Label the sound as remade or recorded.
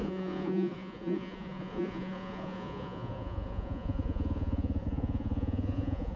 remade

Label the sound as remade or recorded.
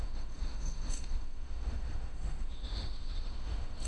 remade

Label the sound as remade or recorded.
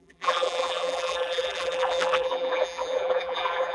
remade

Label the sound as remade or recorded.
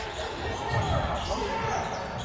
recorded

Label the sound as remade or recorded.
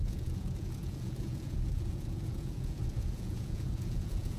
remade